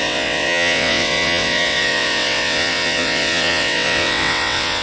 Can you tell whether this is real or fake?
fake